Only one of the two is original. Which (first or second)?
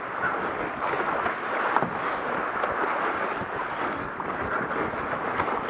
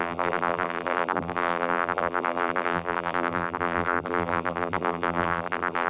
first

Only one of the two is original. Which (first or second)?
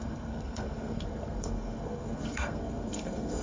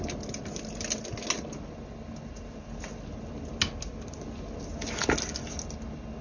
second